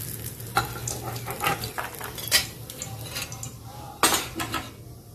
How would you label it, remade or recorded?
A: recorded